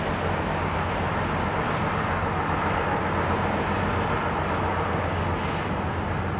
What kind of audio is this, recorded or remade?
recorded